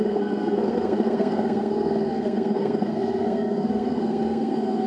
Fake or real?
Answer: fake